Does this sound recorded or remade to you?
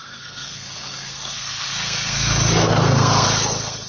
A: remade